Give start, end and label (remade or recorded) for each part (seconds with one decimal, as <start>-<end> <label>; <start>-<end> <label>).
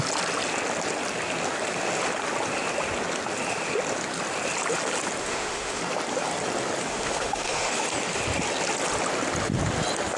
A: 0.0-5.2 recorded; 5.2-5.8 remade; 5.8-6.9 recorded; 6.9-7.7 remade; 7.7-10.2 recorded